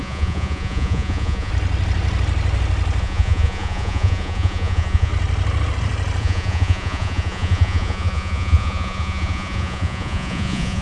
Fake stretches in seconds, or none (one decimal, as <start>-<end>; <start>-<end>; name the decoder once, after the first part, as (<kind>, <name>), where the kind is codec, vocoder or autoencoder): 0.0-1.5 (vocoder, Vocos); 3.0-5.1; 6.2-10.8